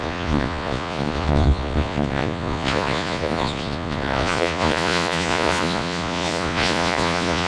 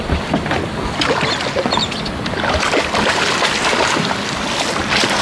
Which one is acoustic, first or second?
second